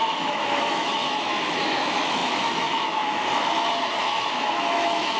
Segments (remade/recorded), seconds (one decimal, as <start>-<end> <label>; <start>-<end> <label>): 0.0-5.2 remade